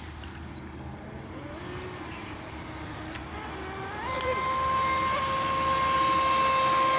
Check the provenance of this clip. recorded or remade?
recorded